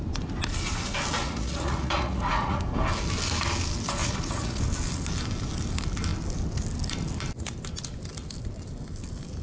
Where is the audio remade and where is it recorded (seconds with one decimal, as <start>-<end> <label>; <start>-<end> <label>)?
0.0-1.2 recorded; 1.2-2.6 remade; 2.6-4.0 recorded; 4.0-4.6 remade; 4.6-9.4 recorded